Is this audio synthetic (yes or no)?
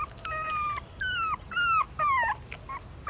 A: no